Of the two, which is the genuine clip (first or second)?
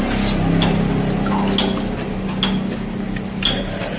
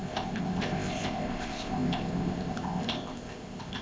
first